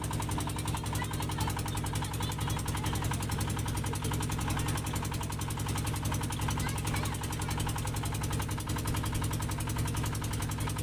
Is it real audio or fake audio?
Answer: real